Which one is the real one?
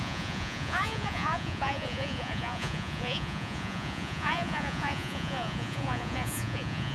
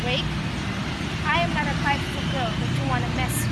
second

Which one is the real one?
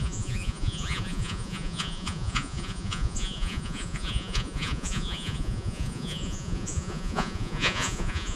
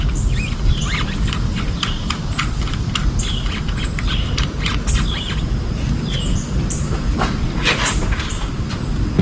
second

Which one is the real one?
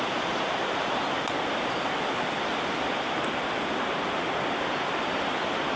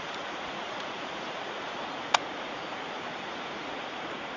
first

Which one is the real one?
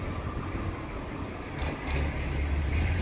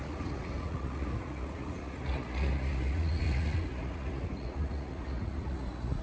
first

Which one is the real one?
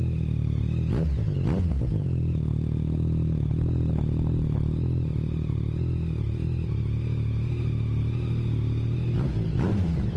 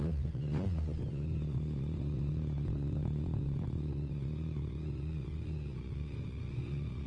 first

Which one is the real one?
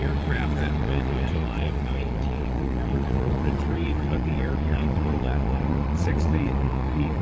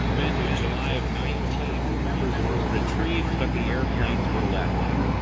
second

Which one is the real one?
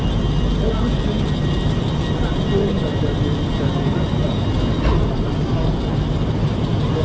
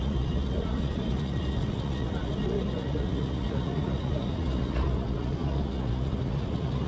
first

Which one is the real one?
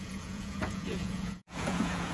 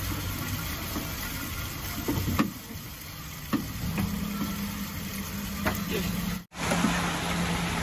second